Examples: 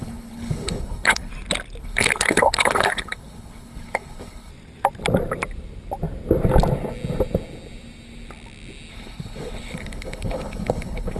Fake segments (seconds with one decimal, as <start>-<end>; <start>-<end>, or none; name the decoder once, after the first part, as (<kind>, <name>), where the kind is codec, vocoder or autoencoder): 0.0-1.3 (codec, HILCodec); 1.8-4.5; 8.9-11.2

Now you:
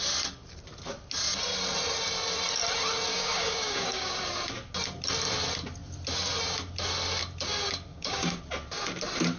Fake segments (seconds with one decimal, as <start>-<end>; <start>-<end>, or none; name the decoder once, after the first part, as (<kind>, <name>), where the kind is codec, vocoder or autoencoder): 3.1-4.1 (codec, DAC); 7.9-8.4

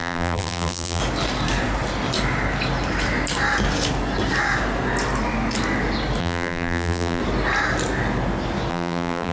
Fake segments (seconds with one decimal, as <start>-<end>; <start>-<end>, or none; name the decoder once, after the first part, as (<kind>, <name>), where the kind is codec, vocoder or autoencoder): 0.0-1.0 (vocoder, BigVGAN v2); 6.2-7.2; 8.7-9.3

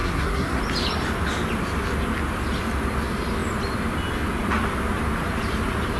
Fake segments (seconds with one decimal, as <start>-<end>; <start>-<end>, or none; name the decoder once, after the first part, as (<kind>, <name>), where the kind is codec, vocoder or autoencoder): 0.0-0.6 (codec, SNAC)

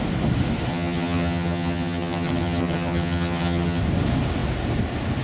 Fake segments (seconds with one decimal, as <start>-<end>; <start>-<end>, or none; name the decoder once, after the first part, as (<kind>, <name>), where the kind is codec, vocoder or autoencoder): 0.7-3.8 (vocoder, HiFi-GAN)

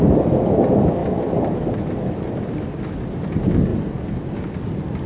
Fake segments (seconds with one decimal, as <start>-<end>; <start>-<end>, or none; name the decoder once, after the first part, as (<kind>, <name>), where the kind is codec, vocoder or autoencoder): none

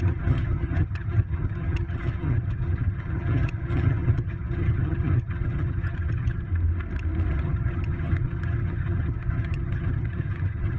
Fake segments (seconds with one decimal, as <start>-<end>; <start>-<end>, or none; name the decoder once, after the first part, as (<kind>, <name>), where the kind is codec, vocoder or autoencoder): 0.0-6.5 (vocoder, HiFi-GAN); 7.3-10.8